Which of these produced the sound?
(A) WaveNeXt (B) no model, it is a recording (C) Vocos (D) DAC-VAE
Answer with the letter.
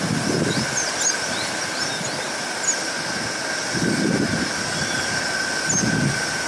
B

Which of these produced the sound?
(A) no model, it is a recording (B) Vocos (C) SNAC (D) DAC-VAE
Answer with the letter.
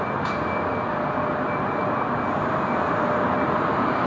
A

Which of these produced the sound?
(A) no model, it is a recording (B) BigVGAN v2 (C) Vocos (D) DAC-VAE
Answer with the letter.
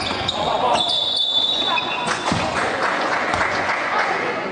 C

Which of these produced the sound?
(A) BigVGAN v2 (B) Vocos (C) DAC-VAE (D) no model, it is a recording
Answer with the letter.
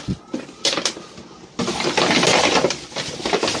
D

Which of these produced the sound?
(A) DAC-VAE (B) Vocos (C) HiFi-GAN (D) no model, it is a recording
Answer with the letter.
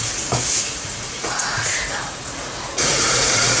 B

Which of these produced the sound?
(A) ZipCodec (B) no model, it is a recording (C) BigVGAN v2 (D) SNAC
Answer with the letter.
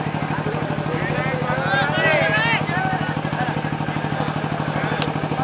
B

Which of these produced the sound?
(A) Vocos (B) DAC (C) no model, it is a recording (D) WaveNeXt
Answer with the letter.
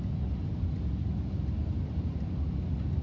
C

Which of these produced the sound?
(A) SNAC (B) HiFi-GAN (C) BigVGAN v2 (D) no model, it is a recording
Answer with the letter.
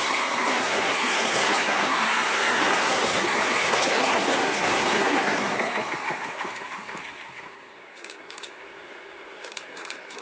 A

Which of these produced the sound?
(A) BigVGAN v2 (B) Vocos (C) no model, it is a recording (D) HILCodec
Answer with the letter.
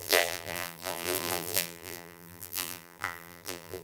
A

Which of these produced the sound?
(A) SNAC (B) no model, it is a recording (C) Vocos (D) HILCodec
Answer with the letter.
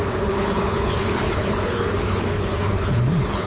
D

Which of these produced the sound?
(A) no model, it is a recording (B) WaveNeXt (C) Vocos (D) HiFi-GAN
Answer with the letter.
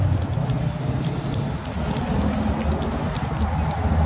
A